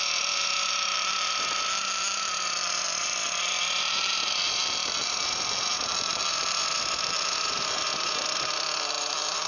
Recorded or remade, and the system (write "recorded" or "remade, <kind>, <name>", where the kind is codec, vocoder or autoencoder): remade, vocoder, BigVGAN v2